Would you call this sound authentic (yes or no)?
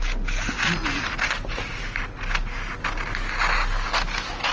yes